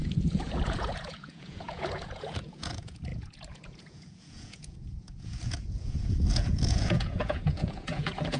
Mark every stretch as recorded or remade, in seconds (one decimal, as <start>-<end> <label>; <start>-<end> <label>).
0.0-8.4 remade